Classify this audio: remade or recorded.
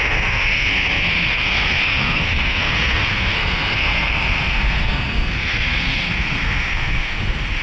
remade